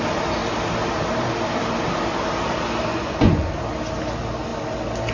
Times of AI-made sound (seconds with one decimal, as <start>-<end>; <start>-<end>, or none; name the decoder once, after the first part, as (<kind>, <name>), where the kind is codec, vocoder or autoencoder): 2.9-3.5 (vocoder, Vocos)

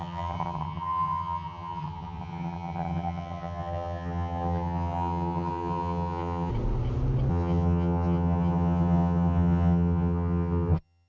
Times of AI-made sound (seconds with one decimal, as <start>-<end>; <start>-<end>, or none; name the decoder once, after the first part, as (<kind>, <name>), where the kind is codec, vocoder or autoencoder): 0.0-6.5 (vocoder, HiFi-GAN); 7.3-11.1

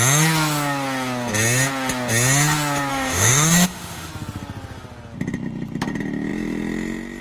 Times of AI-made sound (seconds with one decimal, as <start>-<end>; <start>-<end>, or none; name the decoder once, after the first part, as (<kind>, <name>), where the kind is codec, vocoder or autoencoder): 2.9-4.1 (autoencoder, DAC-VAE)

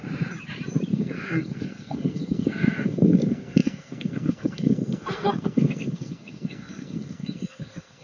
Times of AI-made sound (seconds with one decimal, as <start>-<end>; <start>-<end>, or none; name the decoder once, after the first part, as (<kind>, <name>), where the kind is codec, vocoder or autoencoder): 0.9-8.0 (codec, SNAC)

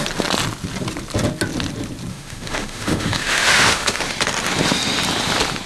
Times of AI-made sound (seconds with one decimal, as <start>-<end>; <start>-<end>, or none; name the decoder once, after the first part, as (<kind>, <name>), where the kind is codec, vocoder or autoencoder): 2.1-4.0 (autoencoder, DAC-VAE)